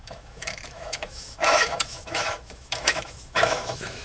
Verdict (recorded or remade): remade